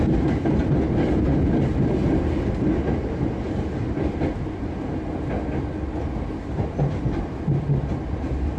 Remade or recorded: recorded